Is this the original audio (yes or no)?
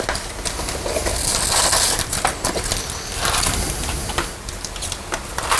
yes